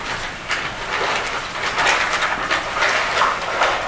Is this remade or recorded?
recorded